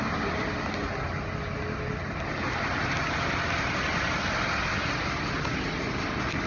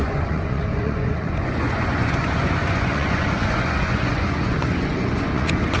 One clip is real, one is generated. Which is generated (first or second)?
second